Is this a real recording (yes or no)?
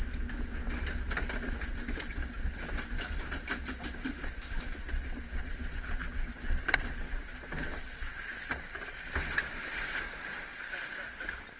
yes